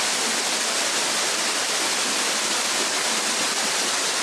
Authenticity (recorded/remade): recorded